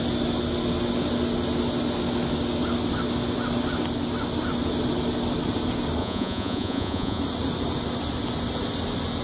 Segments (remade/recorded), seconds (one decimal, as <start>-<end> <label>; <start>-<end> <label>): 0.0-6.0 recorded; 6.0-7.2 remade; 7.2-9.2 recorded